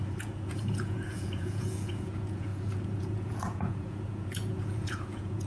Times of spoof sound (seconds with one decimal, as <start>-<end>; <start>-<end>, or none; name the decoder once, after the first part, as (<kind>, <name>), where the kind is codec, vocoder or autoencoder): 0.0-5.5 (vocoder, Vocos)